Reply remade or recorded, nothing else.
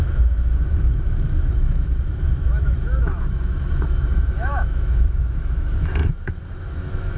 remade